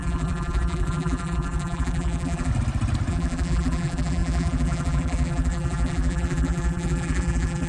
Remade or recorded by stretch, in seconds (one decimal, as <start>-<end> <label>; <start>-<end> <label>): 0.0-2.5 remade; 2.5-3.1 recorded; 3.1-7.7 remade